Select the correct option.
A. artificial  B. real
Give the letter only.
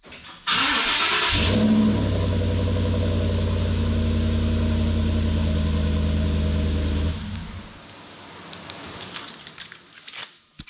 B